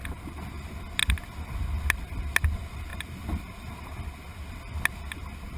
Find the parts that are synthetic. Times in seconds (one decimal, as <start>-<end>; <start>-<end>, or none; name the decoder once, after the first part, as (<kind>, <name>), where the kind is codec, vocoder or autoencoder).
2.9-3.7 (vocoder, BigVGAN v2)